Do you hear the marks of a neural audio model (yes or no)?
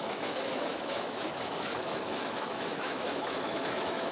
yes